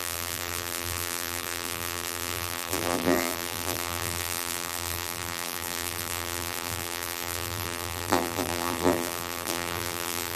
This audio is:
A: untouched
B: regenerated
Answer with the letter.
B